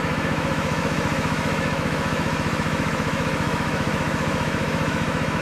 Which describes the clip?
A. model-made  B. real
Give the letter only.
A